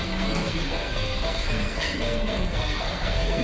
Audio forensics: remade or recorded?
remade